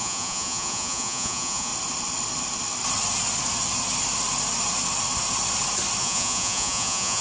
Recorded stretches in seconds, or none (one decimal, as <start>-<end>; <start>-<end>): 1.7-6.0